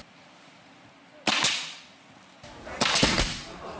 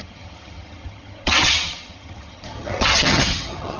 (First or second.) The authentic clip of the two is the first